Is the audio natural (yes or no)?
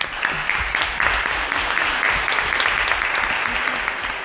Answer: yes